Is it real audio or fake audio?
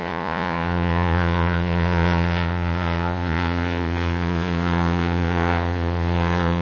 fake